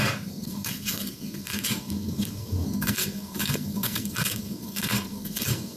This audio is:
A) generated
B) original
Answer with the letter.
A